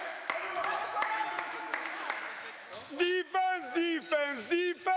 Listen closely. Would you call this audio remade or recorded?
remade